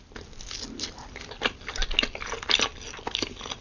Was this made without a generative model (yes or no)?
yes